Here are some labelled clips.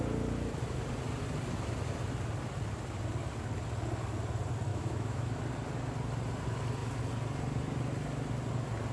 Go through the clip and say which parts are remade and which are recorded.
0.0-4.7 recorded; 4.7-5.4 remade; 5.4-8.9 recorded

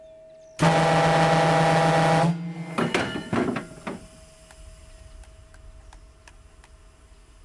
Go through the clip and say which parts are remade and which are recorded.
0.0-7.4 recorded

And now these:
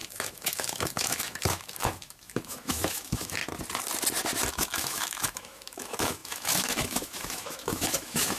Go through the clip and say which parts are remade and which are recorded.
0.0-3.4 remade; 3.4-4.5 recorded; 4.5-8.4 remade

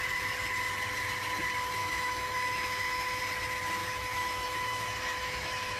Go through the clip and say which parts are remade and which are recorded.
0.0-1.8 recorded; 1.8-3.2 remade; 3.2-3.8 recorded; 3.8-5.8 remade

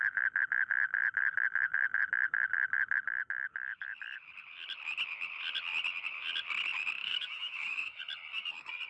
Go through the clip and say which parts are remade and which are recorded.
0.0-7.0 recorded; 7.0-8.0 remade; 8.0-8.9 recorded

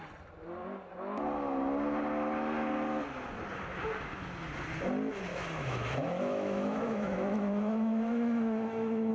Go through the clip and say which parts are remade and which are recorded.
0.0-5.3 recorded; 5.3-9.1 remade

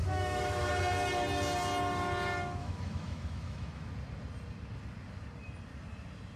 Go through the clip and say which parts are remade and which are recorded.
0.0-0.7 remade; 0.7-2.6 recorded; 2.6-3.9 remade; 3.9-6.4 recorded